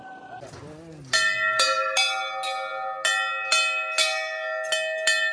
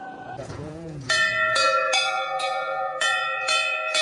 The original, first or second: first